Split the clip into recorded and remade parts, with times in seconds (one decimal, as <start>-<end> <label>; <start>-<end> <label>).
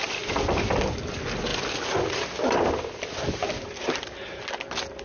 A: 0.0-5.0 recorded